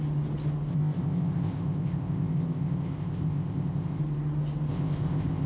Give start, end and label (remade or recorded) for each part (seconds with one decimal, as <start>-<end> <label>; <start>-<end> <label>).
0.0-0.7 recorded; 0.7-4.0 remade; 4.0-4.7 recorded; 4.7-5.5 remade